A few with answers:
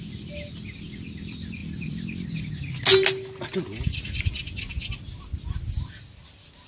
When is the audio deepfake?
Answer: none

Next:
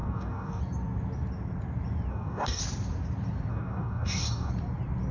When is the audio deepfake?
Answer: 0.0-0.6 (codec, DAC); 2.1-2.6; 3.5-4.5

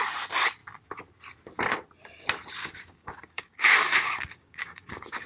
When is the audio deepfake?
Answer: 2.6-5.3 (codec, DAC)

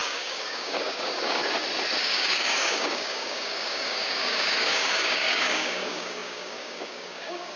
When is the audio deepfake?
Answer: 0.0-1.4 (codec, DAC); 2.0-7.6

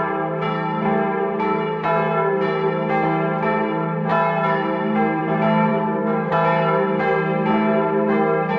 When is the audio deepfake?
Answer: 5.7-6.3 (codec, DAC)